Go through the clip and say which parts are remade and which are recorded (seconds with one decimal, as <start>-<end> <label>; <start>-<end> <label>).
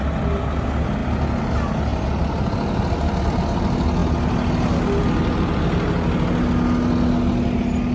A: 0.0-7.9 recorded